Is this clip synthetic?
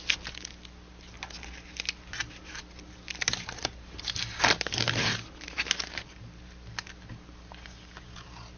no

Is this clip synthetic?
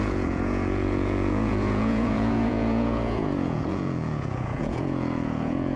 yes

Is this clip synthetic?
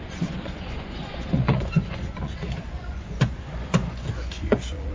yes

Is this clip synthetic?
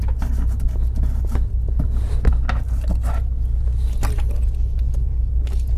no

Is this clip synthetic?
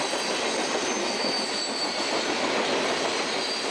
no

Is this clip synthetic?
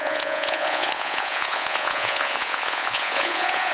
yes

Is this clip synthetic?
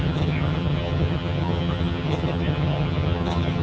yes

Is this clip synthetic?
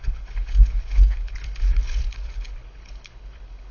yes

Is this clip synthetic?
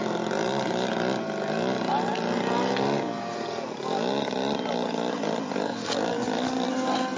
no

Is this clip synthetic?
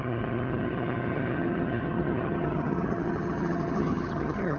yes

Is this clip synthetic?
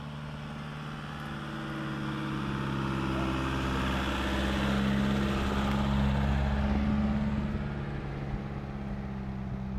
no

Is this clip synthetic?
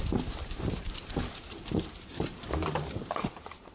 yes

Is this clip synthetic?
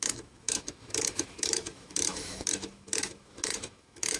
yes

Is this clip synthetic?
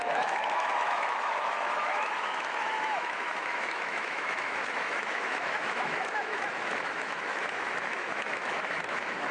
yes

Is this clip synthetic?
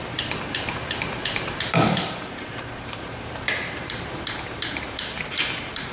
yes